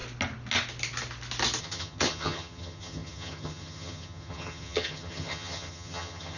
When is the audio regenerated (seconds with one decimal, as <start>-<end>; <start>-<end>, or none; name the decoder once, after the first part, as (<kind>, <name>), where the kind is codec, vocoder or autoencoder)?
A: 1.6-6.4 (vocoder, HiFi-GAN)